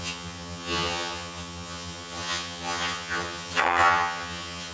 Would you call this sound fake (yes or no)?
yes